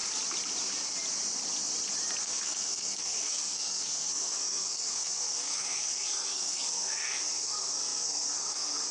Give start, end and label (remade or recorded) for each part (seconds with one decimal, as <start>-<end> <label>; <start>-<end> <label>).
0.0-2.2 recorded; 2.2-8.9 remade